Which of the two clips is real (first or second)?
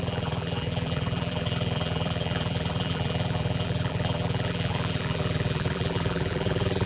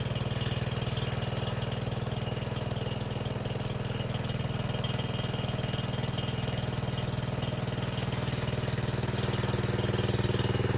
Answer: second